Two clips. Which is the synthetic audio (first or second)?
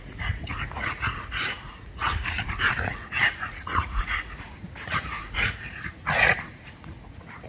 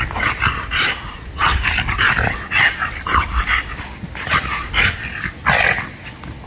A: first